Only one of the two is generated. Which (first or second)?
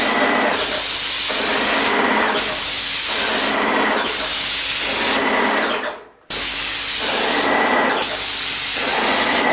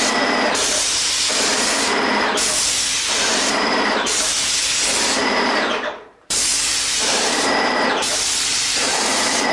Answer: second